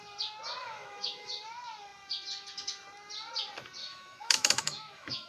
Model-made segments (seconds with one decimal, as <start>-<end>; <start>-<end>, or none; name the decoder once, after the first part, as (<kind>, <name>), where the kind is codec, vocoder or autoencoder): 0.6-1.3 (autoencoder, DAC-VAE); 3.8-5.3